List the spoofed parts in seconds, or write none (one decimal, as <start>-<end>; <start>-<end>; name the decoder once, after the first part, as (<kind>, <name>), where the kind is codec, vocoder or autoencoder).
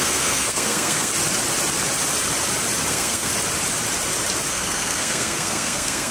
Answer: 0.0-1.1 (codec, SNAC); 2.9-3.3; 4.5-6.1